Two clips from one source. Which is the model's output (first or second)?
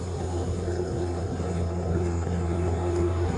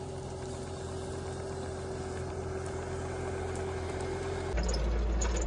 first